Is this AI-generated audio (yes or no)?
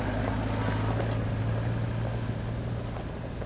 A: no